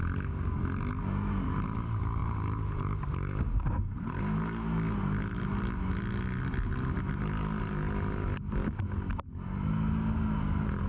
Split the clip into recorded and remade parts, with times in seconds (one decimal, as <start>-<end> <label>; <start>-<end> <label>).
0.0-2.2 recorded; 2.2-4.2 remade; 4.2-10.9 recorded